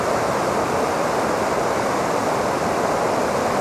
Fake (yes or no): no